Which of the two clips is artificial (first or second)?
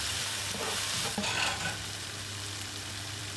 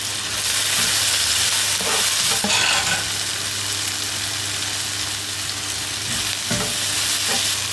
first